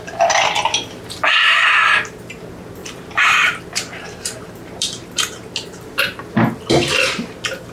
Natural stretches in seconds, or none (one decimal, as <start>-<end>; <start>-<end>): 0.0-2.8; 6.3-7.7